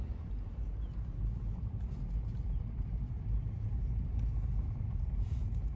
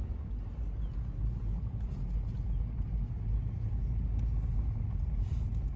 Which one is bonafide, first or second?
second